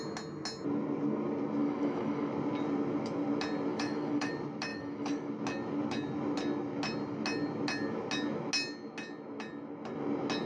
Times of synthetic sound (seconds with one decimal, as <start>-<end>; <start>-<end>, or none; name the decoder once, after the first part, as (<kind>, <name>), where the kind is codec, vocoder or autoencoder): 1.6-2.3 (autoencoder, DAC-VAE); 3.7-4.3; 4.7-5.3